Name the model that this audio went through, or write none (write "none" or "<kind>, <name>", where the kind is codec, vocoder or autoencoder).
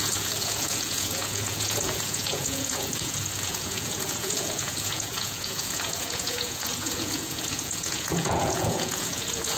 vocoder, Vocos